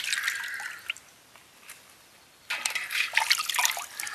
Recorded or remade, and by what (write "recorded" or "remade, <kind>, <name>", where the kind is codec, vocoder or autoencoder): recorded